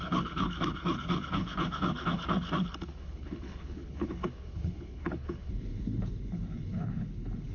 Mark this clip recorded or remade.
remade